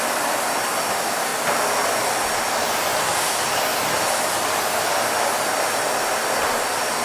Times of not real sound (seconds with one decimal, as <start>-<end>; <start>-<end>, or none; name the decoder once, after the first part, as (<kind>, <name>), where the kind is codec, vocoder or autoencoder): none